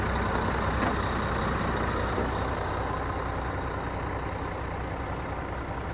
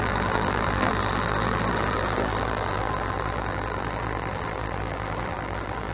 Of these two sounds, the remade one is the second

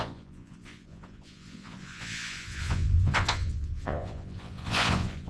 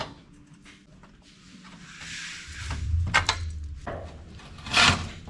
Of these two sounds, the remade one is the first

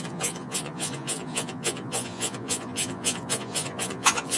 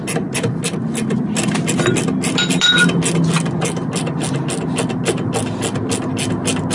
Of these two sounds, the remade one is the first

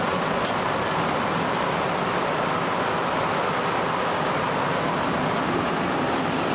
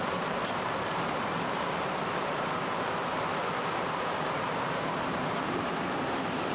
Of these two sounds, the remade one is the second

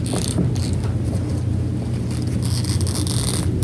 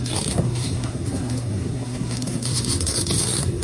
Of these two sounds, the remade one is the second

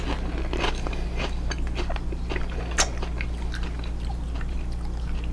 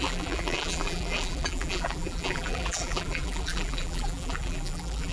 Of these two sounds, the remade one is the second